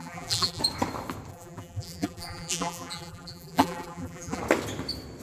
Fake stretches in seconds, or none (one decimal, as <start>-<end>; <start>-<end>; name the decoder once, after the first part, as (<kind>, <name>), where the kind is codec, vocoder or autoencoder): 0.0-0.6 (vocoder, BigVGAN v2); 1.3-4.4